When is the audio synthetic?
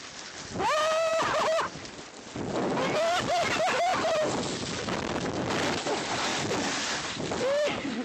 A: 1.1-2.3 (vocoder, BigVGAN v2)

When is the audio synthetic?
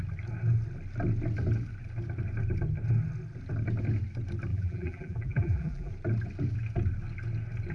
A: 4.5-5.9 (vocoder, BigVGAN v2)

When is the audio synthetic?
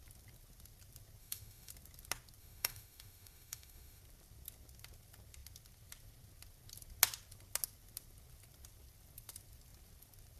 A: 1.2-1.7 (autoencoder, DAC-VAE); 2.4-4.0